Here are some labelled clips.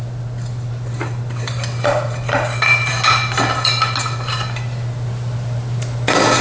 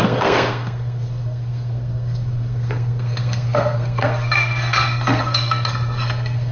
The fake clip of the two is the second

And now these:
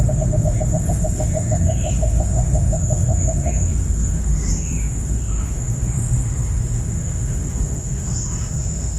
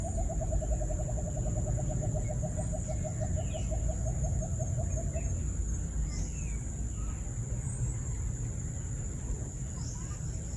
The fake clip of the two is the first